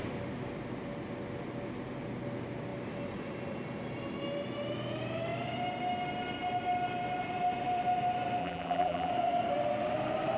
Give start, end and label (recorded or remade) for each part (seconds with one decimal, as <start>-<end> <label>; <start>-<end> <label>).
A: 0.0-8.4 recorded; 8.4-9.1 remade; 9.1-10.4 recorded